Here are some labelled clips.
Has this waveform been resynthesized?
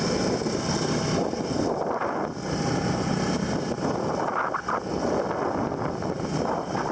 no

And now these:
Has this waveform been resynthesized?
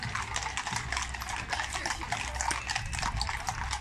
no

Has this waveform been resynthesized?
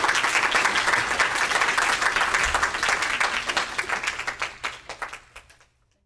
no